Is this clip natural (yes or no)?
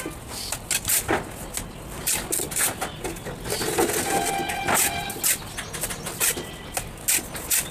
yes